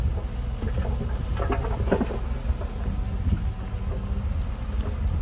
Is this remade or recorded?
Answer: recorded